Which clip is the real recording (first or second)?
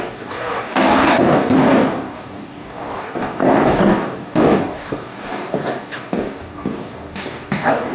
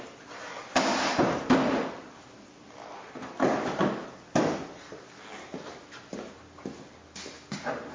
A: second